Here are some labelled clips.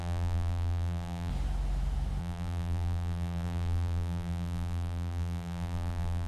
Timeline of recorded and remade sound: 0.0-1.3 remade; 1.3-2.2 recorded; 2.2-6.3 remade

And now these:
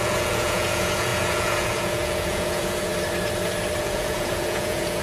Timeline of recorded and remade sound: 0.0-2.9 remade; 2.9-3.8 recorded; 3.8-5.0 remade

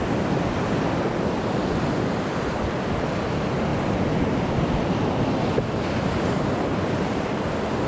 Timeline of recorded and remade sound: 0.0-7.9 recorded

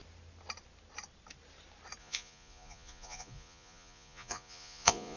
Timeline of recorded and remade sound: 0.0-2.0 recorded; 2.0-5.2 remade

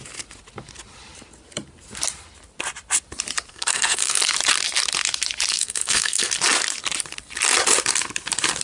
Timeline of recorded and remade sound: 0.0-3.5 recorded; 3.5-4.2 remade; 4.2-5.5 recorded; 5.5-6.3 remade; 6.3-8.6 recorded

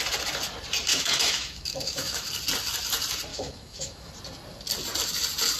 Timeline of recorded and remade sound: 0.0-0.9 recorded; 0.9-2.3 remade; 2.3-3.3 recorded; 3.3-4.1 remade; 4.1-5.6 recorded

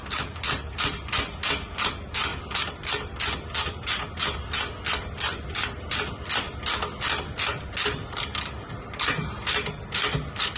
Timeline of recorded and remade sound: 0.0-10.6 recorded

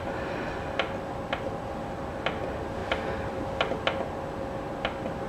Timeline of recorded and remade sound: 0.0-5.3 recorded